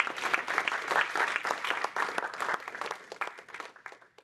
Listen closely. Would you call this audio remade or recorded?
recorded